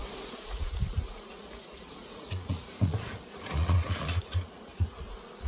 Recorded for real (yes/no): no